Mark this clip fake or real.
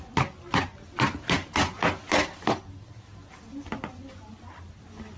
real